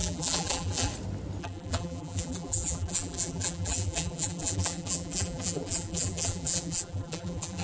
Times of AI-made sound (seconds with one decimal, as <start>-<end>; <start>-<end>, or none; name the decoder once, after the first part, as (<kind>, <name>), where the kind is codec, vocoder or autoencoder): 0.0-0.9 (vocoder, BigVGAN v2); 1.4-7.6